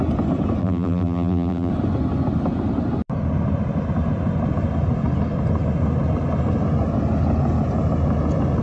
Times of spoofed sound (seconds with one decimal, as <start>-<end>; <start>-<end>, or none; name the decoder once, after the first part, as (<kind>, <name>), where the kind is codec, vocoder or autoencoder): 0.6-1.7 (vocoder, BigVGAN v2)